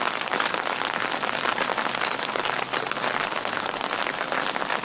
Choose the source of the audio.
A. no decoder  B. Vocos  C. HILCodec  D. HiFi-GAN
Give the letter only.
A